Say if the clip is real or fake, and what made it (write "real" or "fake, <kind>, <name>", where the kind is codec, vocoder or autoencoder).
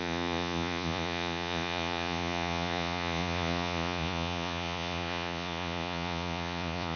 fake, vocoder, Vocos